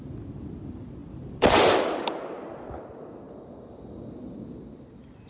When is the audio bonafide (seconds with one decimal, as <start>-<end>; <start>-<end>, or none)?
0.0-5.3